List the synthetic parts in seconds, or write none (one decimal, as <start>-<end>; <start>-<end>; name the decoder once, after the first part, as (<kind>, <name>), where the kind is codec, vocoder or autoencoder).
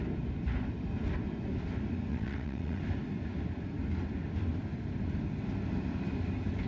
2.1-2.8 (vocoder, WaveNeXt)